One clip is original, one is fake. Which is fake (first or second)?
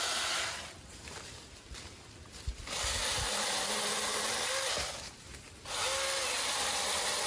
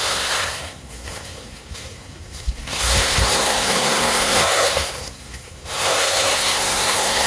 second